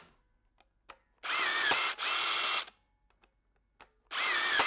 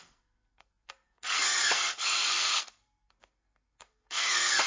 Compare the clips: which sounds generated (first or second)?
second